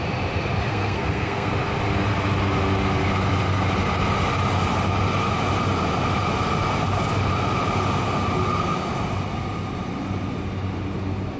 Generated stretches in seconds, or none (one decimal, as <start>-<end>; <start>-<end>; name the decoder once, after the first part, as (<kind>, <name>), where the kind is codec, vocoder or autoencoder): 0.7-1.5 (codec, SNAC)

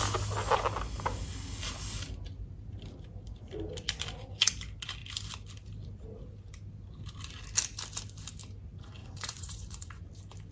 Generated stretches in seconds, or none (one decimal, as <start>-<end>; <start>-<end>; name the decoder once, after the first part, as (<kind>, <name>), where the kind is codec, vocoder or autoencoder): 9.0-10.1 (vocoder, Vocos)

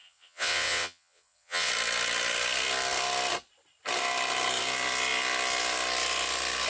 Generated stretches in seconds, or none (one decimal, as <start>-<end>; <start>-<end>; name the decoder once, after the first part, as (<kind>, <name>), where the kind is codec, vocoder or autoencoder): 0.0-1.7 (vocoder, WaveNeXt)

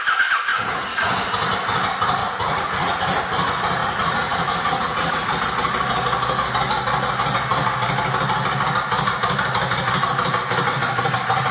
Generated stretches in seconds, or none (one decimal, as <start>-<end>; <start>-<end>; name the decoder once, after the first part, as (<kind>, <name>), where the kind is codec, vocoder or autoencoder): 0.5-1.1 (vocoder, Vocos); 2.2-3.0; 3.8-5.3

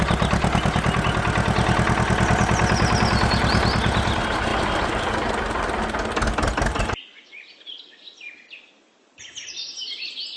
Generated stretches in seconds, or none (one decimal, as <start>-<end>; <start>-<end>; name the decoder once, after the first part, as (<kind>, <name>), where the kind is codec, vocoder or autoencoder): none